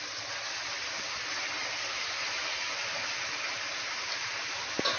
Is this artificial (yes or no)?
yes